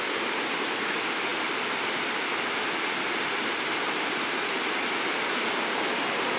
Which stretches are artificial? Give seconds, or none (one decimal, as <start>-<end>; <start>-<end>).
none